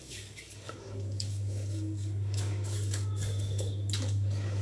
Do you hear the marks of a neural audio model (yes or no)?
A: yes